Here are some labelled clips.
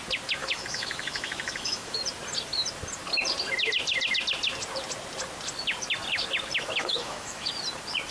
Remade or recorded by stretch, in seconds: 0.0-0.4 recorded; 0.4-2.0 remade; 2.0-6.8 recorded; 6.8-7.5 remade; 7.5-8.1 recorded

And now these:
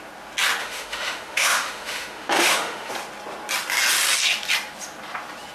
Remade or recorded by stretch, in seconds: 0.0-0.6 recorded; 0.6-2.9 remade; 2.9-5.5 recorded

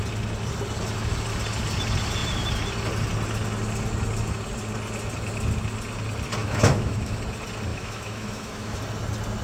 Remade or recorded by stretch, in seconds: 0.0-6.4 recorded; 6.4-7.2 remade; 7.2-7.7 recorded; 7.7-8.8 remade; 8.8-9.4 recorded

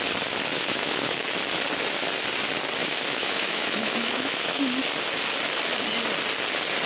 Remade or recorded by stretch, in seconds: 0.0-0.5 recorded; 0.5-1.3 remade; 1.3-2.8 recorded; 2.8-4.6 remade; 4.6-6.9 recorded

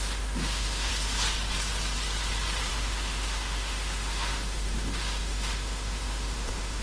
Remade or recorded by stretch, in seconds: 0.0-0.9 remade; 0.9-2.7 recorded; 2.7-6.8 remade

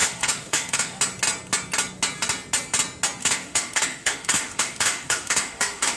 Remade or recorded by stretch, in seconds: 0.0-1.0 remade; 1.0-3.2 recorded; 3.2-6.0 remade